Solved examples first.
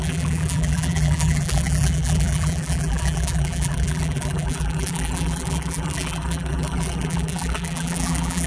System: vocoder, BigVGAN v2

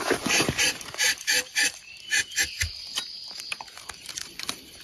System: vocoder, BigVGAN v2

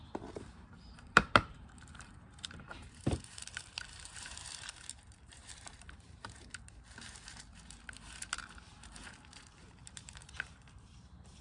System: vocoder, BigVGAN v2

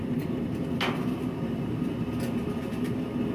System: none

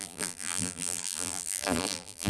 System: vocoder, BigVGAN v2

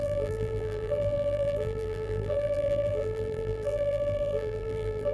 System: vocoder, BigVGAN v2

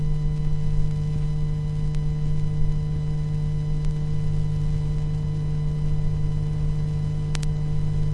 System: none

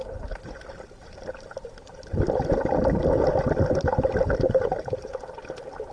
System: none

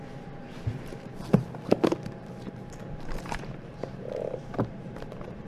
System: vocoder, BigVGAN v2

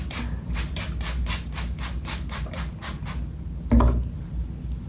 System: none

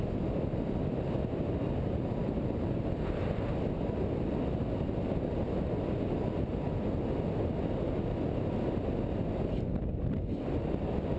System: none